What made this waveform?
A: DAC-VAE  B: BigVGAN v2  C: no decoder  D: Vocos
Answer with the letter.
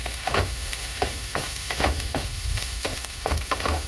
A